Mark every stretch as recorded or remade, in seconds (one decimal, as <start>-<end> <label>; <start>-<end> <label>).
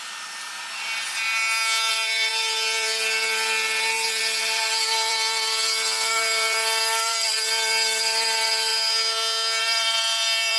0.0-0.5 remade; 0.5-1.9 recorded; 1.9-8.7 remade; 8.7-9.6 recorded; 9.6-10.6 remade